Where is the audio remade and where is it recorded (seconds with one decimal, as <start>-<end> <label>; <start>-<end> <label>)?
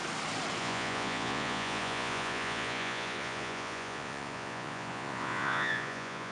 0.0-0.6 recorded; 0.6-6.3 remade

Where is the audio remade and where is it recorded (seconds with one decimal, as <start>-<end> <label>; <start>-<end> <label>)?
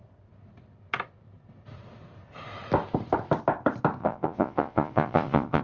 0.0-4.0 recorded; 4.0-5.6 remade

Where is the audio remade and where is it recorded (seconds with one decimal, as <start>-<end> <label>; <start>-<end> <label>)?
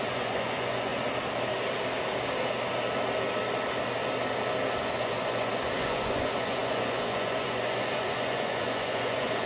0.0-0.9 remade; 0.9-4.8 recorded; 4.8-9.5 remade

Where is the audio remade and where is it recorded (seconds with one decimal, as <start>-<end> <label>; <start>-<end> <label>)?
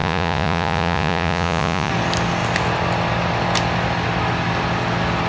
0.0-1.9 remade; 1.9-5.3 recorded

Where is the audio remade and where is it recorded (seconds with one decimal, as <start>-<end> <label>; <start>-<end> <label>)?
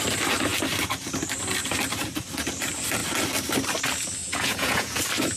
0.0-4.2 recorded; 4.2-5.0 remade; 5.0-5.4 recorded